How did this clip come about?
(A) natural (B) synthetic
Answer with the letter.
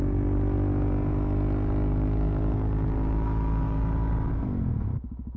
A